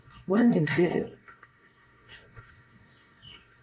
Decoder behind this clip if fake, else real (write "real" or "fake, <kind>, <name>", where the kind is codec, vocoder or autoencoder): fake, codec, SNAC